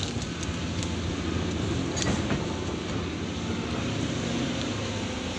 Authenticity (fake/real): real